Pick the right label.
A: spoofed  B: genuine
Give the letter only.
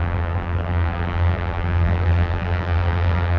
A